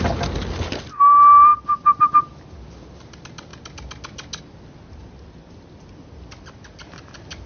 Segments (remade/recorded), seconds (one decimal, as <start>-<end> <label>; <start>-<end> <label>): 0.0-7.5 recorded